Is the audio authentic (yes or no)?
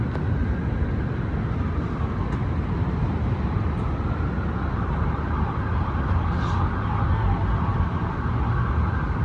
yes